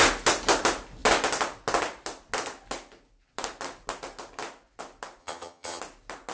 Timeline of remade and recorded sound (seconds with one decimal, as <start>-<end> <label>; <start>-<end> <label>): 0.0-5.2 recorded; 5.2-5.8 remade; 5.8-6.3 recorded